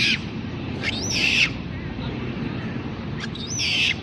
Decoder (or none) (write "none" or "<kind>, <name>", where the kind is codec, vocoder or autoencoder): vocoder, BigVGAN v2